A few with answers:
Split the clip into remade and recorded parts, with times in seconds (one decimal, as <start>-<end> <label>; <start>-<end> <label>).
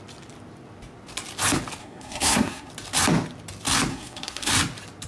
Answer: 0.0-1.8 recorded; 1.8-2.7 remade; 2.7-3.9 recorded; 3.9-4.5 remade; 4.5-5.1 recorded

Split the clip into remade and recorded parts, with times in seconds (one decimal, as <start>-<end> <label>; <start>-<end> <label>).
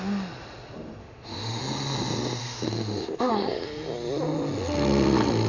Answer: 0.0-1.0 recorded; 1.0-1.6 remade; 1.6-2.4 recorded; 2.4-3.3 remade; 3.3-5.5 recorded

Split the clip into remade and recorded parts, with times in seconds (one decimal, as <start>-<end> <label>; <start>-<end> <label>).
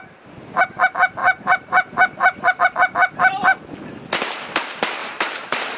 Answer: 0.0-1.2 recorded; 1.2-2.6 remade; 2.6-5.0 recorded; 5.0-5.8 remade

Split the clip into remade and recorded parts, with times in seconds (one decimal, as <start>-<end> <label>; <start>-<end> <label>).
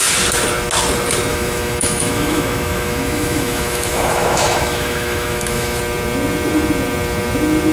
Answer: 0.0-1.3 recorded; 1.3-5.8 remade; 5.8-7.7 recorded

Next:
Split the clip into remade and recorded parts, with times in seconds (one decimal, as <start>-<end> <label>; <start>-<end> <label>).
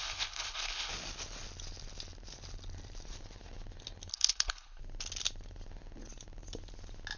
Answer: 0.0-0.9 remade; 0.9-4.1 recorded; 4.1-4.8 remade; 4.8-7.2 recorded